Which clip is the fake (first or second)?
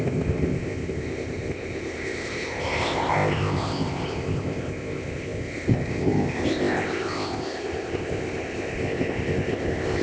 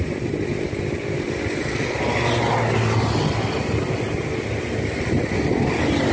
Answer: first